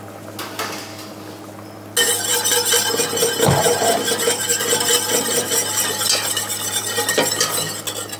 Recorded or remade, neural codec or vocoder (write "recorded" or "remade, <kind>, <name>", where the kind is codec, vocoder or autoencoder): recorded